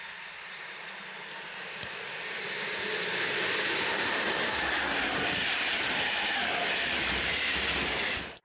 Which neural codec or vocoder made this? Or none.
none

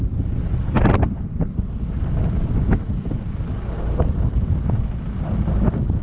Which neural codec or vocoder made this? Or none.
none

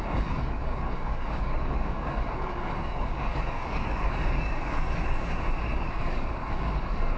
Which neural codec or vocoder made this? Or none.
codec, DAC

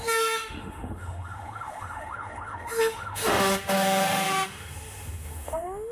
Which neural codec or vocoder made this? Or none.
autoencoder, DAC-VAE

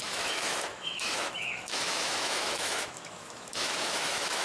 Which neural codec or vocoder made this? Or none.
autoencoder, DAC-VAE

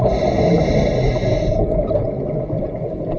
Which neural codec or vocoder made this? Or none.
none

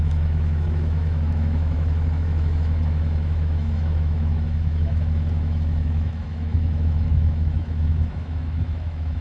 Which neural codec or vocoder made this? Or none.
autoencoder, DAC-VAE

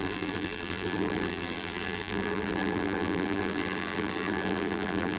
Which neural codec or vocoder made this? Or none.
vocoder, BigVGAN v2